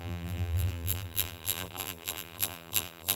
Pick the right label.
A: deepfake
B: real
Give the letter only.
A